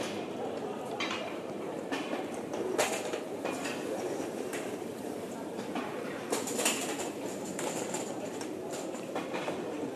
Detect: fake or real fake